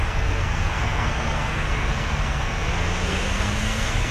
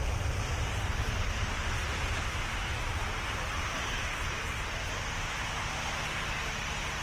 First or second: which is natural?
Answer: second